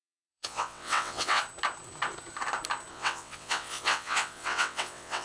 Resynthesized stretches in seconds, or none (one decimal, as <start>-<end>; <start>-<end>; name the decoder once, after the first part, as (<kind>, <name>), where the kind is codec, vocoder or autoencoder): 0.0-1.4 (vocoder, WaveNeXt); 2.9-5.2